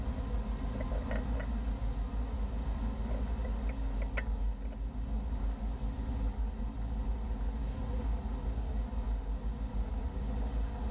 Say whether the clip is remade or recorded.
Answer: recorded